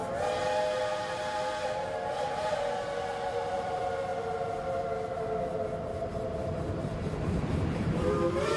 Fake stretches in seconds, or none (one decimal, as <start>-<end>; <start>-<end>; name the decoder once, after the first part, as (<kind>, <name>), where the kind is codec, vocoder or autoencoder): 3.3-4.1 (vocoder, BigVGAN v2); 6.8-8.6